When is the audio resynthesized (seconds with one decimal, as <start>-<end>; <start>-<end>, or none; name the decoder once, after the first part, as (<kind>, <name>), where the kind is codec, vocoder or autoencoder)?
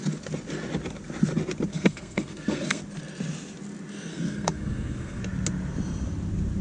1.7-2.8 (codec, SNAC); 4.1-5.2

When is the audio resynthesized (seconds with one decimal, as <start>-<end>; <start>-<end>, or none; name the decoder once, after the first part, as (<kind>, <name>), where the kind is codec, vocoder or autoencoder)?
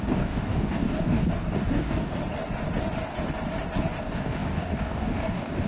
0.0-2.2 (codec, DAC); 4.0-5.7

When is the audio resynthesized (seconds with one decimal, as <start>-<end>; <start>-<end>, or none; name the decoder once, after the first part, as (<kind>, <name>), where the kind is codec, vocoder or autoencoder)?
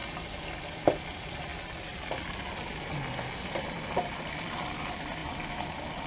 none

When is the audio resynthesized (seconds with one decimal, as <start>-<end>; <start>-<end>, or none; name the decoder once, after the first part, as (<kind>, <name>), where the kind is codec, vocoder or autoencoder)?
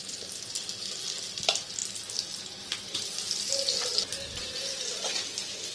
none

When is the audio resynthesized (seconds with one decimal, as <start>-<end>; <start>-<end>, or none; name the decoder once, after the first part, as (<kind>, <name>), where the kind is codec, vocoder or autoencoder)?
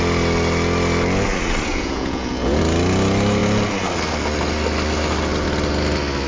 1.7-2.6 (vocoder, Vocos)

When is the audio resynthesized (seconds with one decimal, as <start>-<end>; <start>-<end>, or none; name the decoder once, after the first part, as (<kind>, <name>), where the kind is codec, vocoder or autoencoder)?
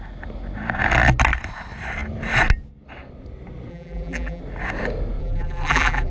3.7-4.4 (vocoder, BigVGAN v2); 5.2-6.1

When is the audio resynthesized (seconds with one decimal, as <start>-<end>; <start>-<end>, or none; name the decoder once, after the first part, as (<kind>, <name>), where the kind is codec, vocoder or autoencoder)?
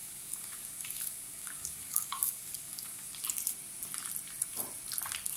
0.0-3.2 (codec, DAC)